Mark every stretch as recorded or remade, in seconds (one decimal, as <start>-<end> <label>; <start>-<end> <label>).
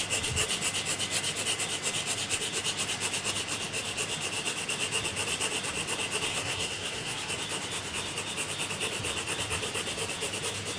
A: 0.0-6.3 recorded; 6.3-7.3 remade; 7.3-10.8 recorded